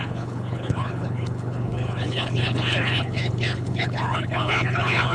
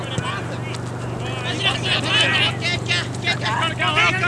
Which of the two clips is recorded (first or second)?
second